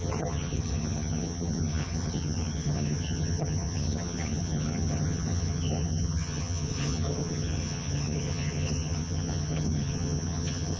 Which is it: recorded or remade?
remade